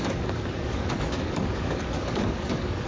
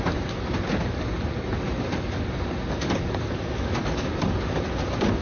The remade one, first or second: first